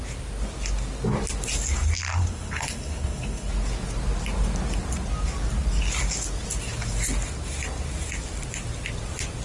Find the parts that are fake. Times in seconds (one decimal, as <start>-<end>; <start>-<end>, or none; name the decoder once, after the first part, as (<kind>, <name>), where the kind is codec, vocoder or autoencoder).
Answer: 2.2-3.5 (codec, HILCodec)